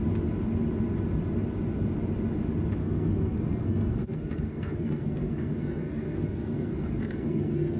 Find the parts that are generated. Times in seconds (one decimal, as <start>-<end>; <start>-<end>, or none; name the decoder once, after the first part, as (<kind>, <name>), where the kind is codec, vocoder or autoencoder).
2.8-7.8 (codec, SNAC)